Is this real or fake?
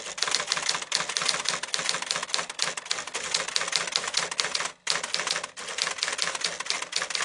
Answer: real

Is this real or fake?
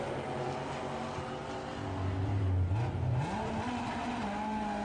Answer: real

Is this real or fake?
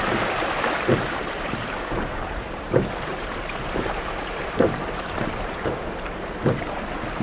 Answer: fake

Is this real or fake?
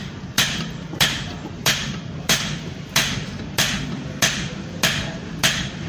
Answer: fake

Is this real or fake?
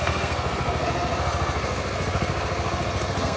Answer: fake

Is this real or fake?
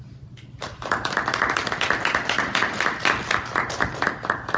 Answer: real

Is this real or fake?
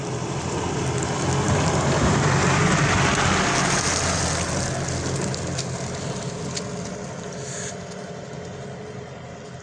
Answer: real